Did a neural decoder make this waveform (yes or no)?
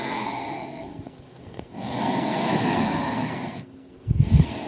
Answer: yes